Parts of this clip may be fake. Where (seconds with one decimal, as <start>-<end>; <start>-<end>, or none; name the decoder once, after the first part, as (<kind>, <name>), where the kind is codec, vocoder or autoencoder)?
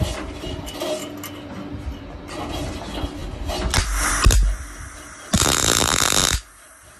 none